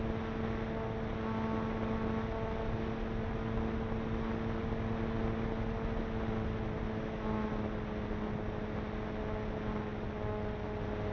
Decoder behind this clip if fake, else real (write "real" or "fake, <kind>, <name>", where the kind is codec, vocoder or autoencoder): real